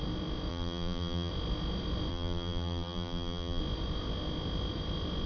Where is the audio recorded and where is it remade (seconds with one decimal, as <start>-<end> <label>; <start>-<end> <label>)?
0.0-0.5 recorded; 0.5-1.3 remade; 1.3-2.1 recorded; 2.1-3.6 remade; 3.6-5.3 recorded